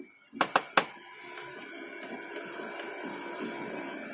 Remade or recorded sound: recorded